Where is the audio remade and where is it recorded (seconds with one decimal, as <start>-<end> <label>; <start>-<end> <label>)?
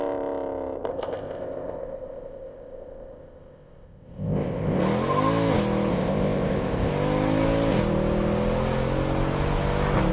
0.0-0.9 recorded; 0.9-4.8 remade; 4.8-5.9 recorded; 5.9-6.9 remade; 6.9-10.1 recorded